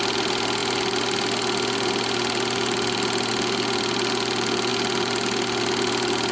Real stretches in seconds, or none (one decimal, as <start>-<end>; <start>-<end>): 0.0-6.3